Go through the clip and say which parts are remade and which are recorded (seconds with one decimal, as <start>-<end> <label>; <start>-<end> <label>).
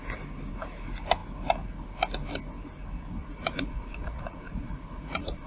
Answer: 0.0-3.2 recorded; 3.2-5.5 remade